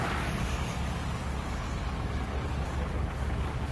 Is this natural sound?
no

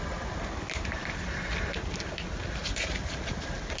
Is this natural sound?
yes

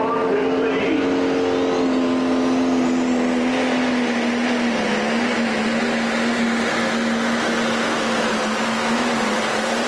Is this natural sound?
yes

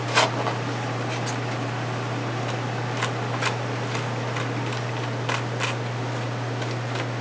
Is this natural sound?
yes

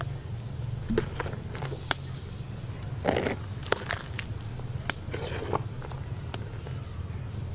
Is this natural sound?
yes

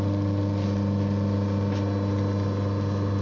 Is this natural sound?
yes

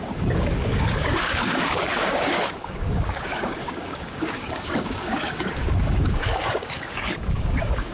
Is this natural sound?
no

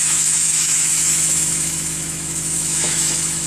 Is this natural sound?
no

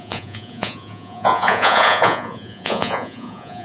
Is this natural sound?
no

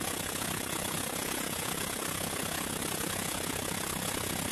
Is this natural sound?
no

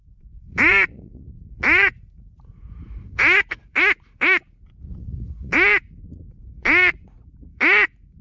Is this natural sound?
no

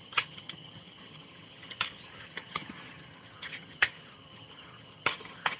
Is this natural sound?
no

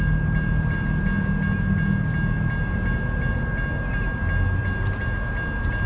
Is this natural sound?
yes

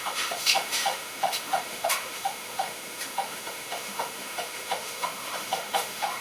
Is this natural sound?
no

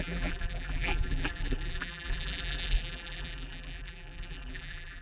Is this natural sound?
no